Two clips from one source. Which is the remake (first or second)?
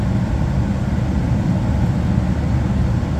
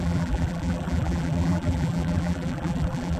second